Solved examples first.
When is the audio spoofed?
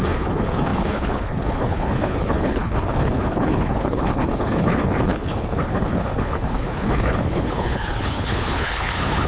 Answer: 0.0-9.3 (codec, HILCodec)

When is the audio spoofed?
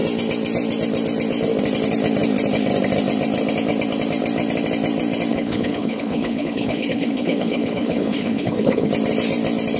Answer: 5.3-8.9 (codec, HILCodec)